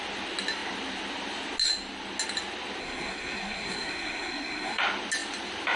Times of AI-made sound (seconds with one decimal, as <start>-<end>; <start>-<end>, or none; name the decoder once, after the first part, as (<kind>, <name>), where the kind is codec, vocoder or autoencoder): 2.8-4.8 (codec, SNAC)